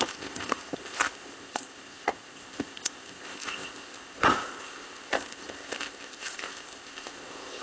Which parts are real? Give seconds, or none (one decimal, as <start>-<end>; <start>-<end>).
none